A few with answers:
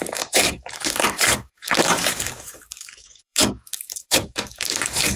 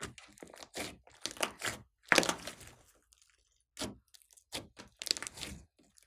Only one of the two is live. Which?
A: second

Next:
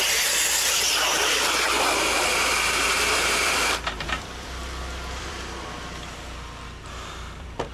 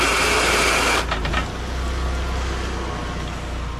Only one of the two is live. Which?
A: second